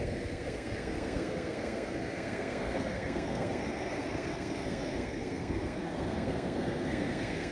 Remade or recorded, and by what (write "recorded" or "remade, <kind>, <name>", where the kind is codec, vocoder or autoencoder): remade, codec, SNAC